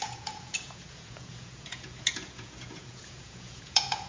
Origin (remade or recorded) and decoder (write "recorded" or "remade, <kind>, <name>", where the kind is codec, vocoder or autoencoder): remade, vocoder, Vocos